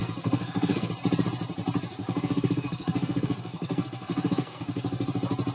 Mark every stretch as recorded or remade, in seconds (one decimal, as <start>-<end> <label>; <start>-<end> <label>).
0.0-0.9 remade; 0.9-2.0 recorded; 2.0-5.1 remade; 5.1-5.5 recorded